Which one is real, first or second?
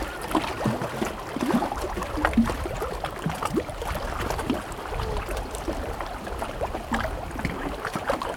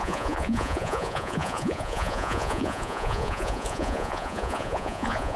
first